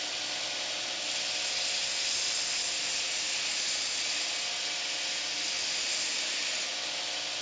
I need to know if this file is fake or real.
real